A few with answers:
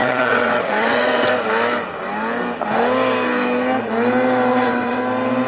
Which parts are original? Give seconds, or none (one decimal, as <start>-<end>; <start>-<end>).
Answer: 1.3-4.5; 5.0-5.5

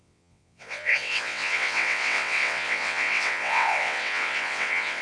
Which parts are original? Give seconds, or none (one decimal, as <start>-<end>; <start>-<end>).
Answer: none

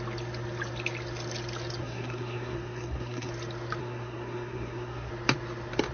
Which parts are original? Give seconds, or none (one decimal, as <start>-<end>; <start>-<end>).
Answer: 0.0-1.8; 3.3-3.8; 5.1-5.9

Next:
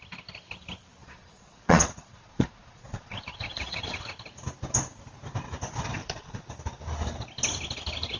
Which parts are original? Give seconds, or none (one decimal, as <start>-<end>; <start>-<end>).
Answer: 0.0-1.0; 4.0-6.0; 6.5-8.2

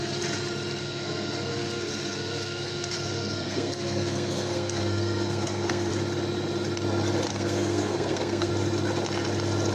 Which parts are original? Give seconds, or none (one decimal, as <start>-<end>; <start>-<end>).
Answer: 0.0-0.8; 5.9-7.3; 8.5-9.7

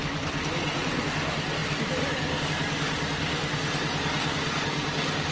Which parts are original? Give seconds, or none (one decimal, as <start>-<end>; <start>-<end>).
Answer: 1.0-5.3